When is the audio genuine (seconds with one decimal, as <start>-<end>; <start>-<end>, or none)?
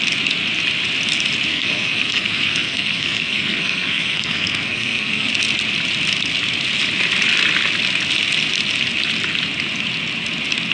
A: 0.0-1.5; 5.3-10.7